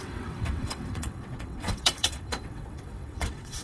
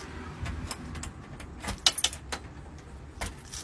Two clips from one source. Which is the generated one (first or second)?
first